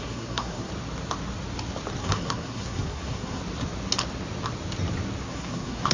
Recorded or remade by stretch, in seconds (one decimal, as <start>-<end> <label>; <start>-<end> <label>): 0.0-0.7 remade; 0.7-2.0 recorded; 2.0-3.4 remade; 3.4-5.2 recorded; 5.2-5.9 remade